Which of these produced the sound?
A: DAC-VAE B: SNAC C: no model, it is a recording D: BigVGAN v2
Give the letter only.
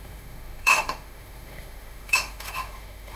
A